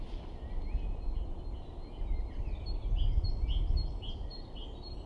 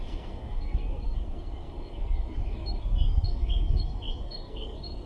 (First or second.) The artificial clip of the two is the second